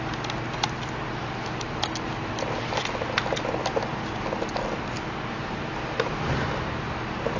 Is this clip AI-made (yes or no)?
no